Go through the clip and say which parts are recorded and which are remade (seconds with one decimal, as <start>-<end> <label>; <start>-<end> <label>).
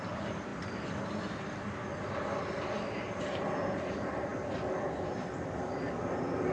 0.0-6.5 recorded